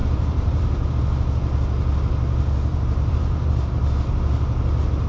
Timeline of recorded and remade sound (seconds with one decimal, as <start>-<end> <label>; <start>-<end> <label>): 0.0-1.0 remade; 1.0-2.7 recorded; 2.7-3.8 remade; 3.8-5.1 recorded